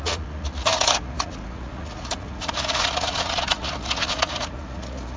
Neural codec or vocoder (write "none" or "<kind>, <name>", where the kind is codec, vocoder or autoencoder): vocoder, Vocos